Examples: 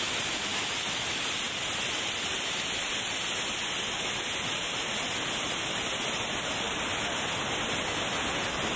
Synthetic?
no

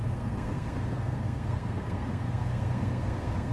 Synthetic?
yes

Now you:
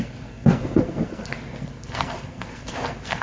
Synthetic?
yes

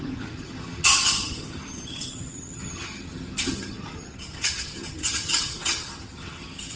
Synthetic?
yes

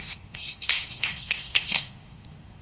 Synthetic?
yes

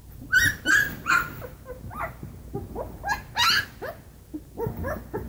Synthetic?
no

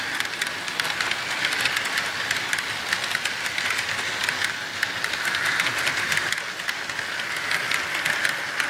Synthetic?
no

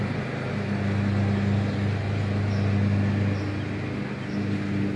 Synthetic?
no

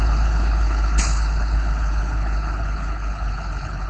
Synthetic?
yes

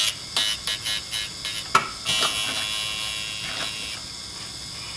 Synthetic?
no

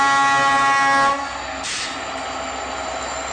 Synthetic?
no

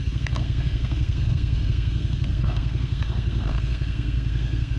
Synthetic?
yes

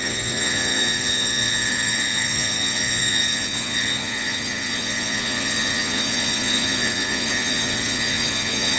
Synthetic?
yes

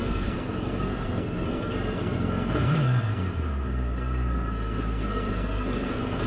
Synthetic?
yes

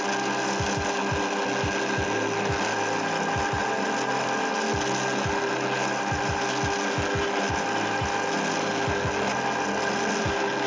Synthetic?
no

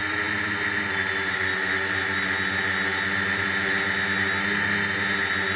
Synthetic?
no